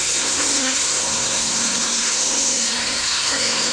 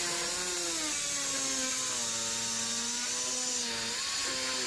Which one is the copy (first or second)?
first